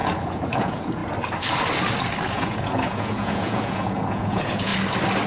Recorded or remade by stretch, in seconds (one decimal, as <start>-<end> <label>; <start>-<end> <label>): 0.0-1.0 remade; 1.0-2.3 recorded; 2.3-4.7 remade; 4.7-5.3 recorded